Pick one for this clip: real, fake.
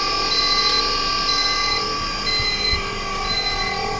fake